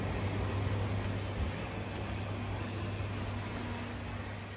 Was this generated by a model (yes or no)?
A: no